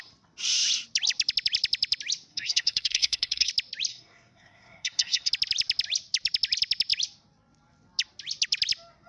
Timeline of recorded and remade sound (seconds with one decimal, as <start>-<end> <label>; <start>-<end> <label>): 0.0-2.3 recorded; 2.3-3.5 remade; 3.5-3.9 recorded; 3.9-5.3 remade; 5.3-9.1 recorded